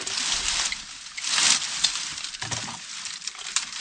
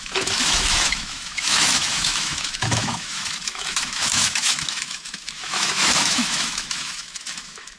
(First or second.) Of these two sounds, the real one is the first